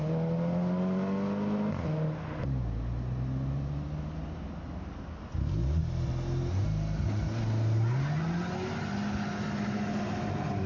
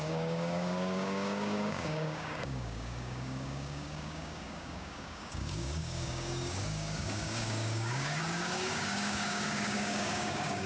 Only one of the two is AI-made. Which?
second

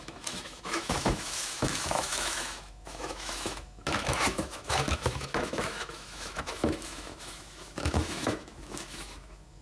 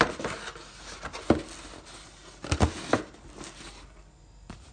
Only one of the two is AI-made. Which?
first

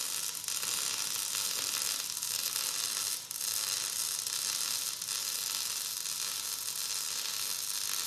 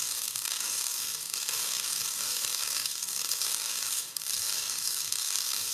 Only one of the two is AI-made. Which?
second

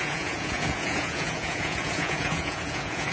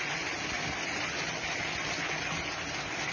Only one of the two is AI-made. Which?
first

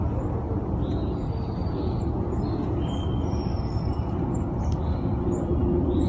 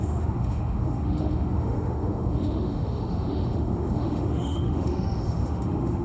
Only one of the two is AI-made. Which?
second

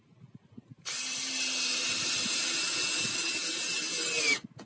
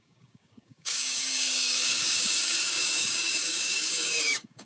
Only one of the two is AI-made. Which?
second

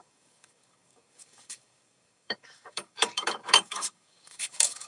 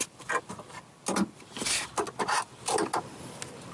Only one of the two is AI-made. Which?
first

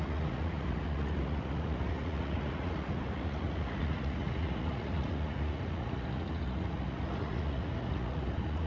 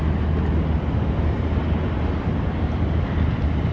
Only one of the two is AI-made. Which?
first